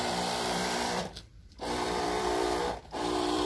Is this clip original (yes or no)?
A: no